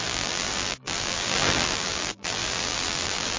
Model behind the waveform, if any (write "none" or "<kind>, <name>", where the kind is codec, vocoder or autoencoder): vocoder, BigVGAN v2